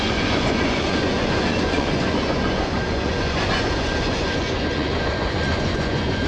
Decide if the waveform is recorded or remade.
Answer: remade